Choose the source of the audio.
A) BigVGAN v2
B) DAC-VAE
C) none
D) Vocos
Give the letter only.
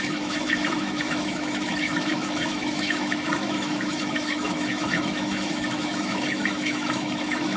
B